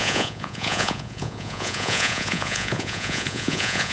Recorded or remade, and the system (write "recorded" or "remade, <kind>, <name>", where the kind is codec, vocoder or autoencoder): remade, vocoder, Vocos